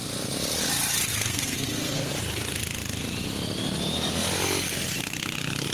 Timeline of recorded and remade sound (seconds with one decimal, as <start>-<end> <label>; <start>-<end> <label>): 0.0-1.1 recorded; 1.1-2.1 remade; 2.1-5.7 recorded